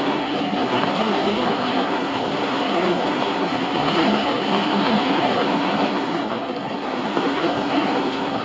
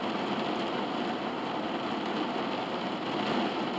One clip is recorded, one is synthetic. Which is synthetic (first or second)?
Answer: first